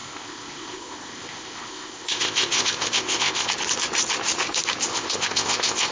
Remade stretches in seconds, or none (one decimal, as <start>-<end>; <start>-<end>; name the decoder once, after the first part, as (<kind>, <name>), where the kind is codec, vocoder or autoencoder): 0.0-3.5 (codec, ZipCodec); 4.9-5.9